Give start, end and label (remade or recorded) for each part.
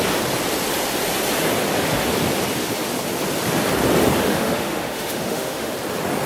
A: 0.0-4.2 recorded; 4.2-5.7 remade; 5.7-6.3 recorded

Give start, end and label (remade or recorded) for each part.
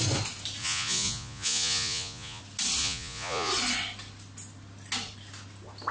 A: 0.0-0.6 recorded; 0.6-2.4 remade; 2.4-2.8 recorded; 2.8-3.5 remade; 3.5-5.9 recorded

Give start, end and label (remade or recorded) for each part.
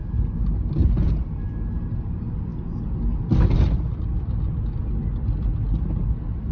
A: 0.0-6.5 recorded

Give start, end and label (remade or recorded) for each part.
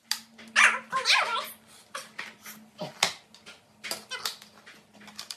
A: 0.0-1.3 recorded; 1.3-2.7 remade; 2.7-5.4 recorded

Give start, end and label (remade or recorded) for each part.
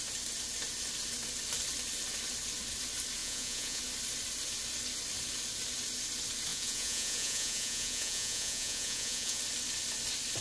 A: 0.0-3.2 recorded; 3.2-3.8 remade; 3.8-6.5 recorded; 6.5-9.4 remade; 9.4-10.4 recorded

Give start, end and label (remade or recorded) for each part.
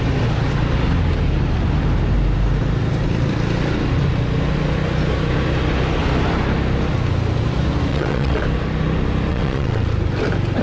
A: 0.0-7.9 recorded; 7.9-8.4 remade; 8.4-9.3 recorded; 9.3-9.9 remade; 9.9-10.6 recorded